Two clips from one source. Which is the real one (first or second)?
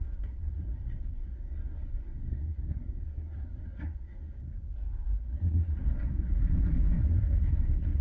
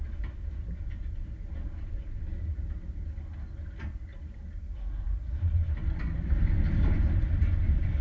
second